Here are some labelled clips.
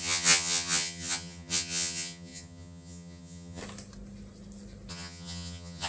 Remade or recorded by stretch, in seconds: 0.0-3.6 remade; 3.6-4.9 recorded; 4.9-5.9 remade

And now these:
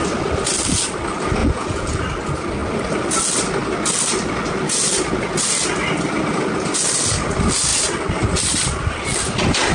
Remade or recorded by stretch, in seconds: 0.0-1.4 recorded; 1.4-2.0 remade; 2.0-9.7 recorded

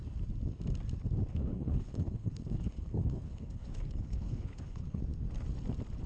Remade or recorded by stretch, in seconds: 0.0-1.3 recorded; 1.3-5.0 remade; 5.0-6.1 recorded

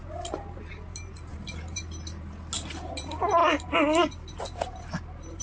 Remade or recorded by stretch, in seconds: 0.0-5.4 recorded

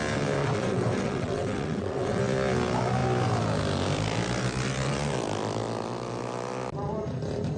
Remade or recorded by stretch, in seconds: 0.0-0.4 recorded; 0.4-2.2 remade; 2.2-7.6 recorded